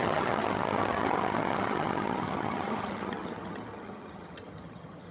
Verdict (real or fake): fake